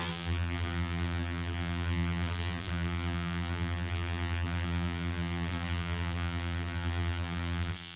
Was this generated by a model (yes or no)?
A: yes